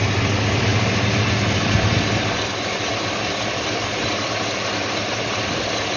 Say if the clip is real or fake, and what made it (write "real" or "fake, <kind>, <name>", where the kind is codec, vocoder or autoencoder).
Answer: real